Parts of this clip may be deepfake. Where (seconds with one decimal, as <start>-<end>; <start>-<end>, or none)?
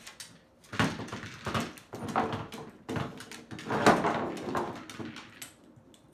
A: none